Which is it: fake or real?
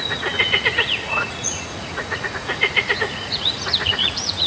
fake